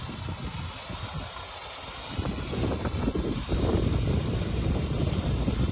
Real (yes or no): yes